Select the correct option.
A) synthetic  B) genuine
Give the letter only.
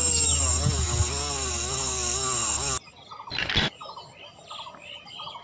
B